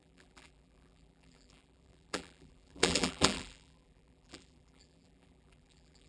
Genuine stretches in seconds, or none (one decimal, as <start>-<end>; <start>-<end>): none